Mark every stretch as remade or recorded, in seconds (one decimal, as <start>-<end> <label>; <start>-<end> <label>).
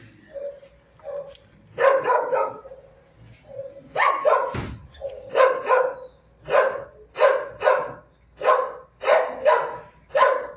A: 0.0-2.3 recorded; 2.3-3.0 remade; 3.0-10.6 recorded